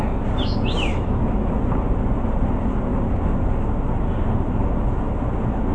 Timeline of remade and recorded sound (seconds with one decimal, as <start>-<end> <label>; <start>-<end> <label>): 0.0-0.9 recorded; 0.9-1.5 remade; 1.5-5.7 recorded